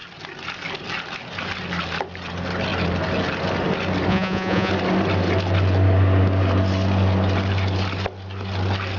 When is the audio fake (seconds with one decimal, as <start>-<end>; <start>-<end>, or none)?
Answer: 4.1-4.7